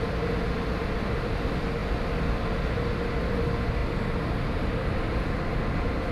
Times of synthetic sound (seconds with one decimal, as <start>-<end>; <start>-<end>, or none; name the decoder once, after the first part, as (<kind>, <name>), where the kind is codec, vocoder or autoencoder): none